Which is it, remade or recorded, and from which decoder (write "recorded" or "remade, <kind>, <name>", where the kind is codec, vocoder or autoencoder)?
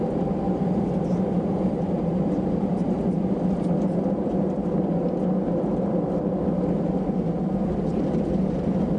recorded